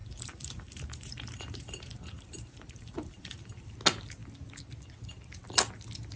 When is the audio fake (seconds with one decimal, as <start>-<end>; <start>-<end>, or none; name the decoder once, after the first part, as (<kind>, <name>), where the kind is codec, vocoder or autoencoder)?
0.0-3.7 (vocoder, BigVGAN v2)